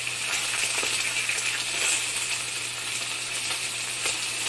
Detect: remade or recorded recorded